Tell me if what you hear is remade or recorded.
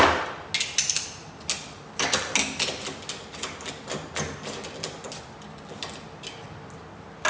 recorded